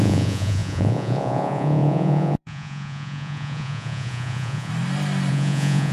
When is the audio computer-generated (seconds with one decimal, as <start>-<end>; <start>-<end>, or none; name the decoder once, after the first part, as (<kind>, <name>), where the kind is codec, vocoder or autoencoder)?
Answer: 0.0-4.7 (vocoder, Vocos); 5.3-5.9